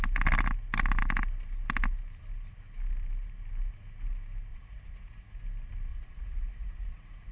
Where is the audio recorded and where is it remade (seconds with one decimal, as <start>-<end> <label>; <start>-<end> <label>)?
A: 0.0-4.5 recorded; 4.5-5.4 remade; 5.4-5.9 recorded; 5.9-7.3 remade